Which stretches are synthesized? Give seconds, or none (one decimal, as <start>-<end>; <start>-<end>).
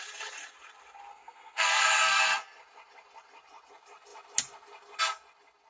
1.1-2.4